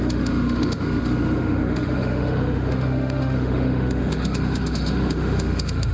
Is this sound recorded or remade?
remade